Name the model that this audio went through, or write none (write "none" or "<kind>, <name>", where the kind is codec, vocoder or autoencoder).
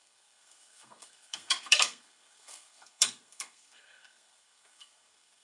codec, SNAC